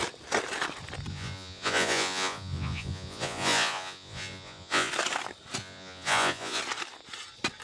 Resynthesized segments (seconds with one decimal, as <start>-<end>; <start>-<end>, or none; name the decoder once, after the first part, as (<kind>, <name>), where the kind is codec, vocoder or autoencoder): 1.1-4.9 (vocoder, Vocos); 5.6-6.6

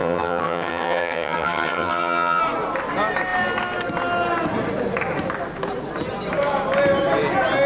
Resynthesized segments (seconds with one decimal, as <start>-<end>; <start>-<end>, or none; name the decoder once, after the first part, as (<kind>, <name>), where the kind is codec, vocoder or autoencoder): 0.0-2.4 (vocoder, HiFi-GAN)